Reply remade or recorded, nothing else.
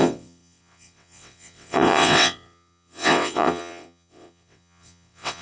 remade